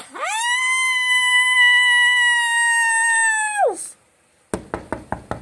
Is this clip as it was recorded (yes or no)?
yes